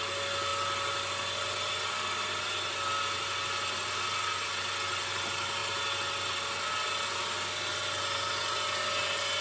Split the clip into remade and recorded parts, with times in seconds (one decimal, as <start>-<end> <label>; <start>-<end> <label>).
0.0-9.4 recorded